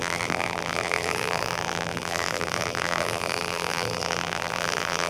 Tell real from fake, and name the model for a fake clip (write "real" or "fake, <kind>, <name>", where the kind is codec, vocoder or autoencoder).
fake, vocoder, BigVGAN v2